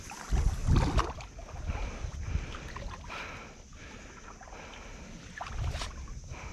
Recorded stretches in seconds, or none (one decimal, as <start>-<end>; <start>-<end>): 0.0-0.6; 1.2-6.5